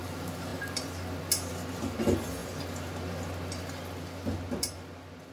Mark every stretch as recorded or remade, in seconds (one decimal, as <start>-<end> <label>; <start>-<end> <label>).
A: 0.0-5.3 recorded

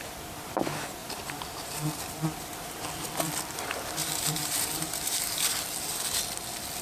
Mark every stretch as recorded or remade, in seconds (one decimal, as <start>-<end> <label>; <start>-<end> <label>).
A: 0.0-1.0 recorded; 1.0-1.9 remade; 1.9-4.0 recorded; 4.0-5.4 remade; 5.4-6.8 recorded

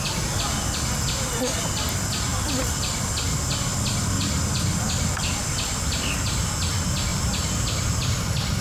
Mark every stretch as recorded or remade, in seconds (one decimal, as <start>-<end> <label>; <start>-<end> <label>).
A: 0.0-2.3 recorded; 2.3-3.2 remade; 3.2-3.7 recorded; 3.7-5.7 remade; 5.7-7.1 recorded; 7.1-8.6 remade

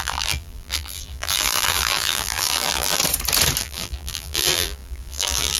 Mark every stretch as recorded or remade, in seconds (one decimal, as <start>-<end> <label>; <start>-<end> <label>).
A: 0.0-3.0 remade; 3.0-3.6 recorded; 3.6-5.6 remade